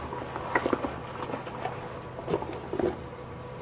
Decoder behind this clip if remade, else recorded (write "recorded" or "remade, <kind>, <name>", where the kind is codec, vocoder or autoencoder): recorded